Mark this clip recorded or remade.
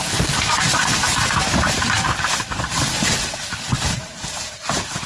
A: remade